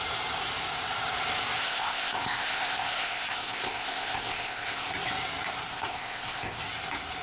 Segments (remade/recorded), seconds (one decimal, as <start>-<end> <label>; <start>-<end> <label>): 0.0-1.6 recorded; 1.6-4.9 remade; 4.9-5.7 recorded; 5.7-6.6 remade; 6.6-7.2 recorded